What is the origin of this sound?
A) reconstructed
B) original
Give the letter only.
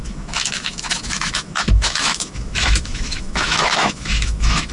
A